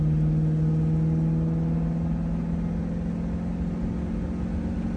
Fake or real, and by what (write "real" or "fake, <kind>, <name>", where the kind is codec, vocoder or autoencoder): real